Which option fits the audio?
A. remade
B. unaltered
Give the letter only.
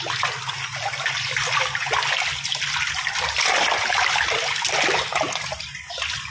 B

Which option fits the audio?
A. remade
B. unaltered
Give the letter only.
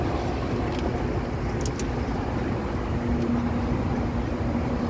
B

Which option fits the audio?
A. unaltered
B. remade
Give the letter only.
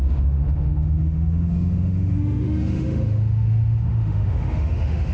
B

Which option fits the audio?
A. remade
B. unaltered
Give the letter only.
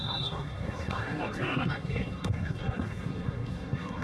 A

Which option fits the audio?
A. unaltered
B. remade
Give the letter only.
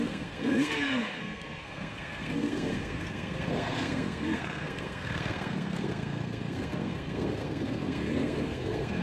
B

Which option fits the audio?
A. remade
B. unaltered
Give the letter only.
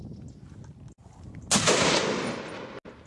B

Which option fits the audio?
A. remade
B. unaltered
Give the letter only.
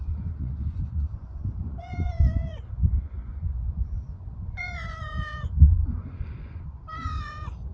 A